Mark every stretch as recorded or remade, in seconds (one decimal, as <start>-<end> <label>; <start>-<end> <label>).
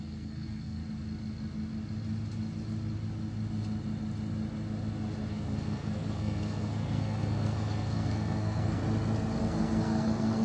0.0-0.8 remade; 0.8-5.3 recorded; 5.3-8.8 remade; 8.8-9.4 recorded; 9.4-10.4 remade